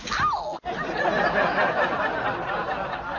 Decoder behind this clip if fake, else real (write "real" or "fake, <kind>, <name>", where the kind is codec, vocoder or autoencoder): real